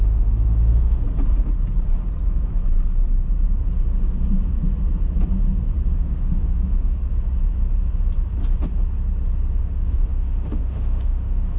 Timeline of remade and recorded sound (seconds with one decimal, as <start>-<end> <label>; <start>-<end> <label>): 0.0-1.0 remade; 1.0-6.0 recorded; 6.0-7.0 remade; 7.0-9.6 recorded; 9.6-11.6 remade